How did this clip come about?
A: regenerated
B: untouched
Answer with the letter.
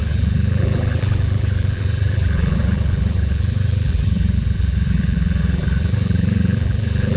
A